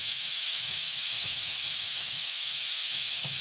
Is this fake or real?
fake